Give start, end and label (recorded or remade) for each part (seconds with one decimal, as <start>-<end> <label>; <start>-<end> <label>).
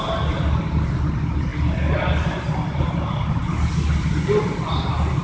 0.0-5.2 recorded